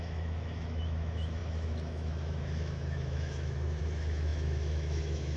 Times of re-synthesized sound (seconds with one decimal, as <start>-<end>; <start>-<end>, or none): 0.0-5.4